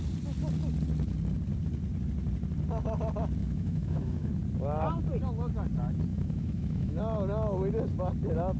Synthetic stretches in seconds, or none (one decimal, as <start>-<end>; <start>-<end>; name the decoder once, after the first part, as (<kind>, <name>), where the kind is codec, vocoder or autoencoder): 3.4-4.3 (autoencoder, DAC-VAE); 6.1-7.0